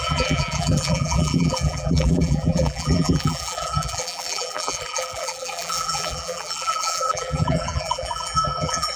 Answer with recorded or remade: remade